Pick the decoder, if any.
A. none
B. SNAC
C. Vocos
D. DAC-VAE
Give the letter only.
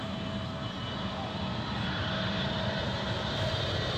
A